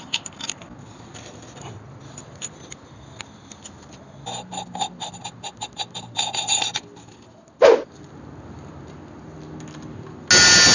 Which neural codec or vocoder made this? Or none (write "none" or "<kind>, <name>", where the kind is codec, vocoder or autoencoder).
none